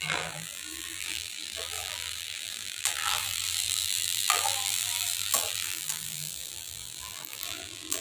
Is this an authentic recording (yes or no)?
no